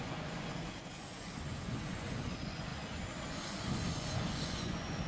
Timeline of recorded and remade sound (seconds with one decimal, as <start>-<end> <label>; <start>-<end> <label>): 0.0-5.1 remade